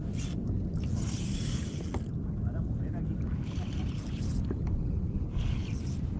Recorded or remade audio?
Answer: recorded